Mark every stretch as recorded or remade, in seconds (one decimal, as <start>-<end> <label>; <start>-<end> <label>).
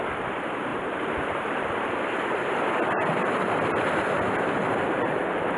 0.0-5.6 recorded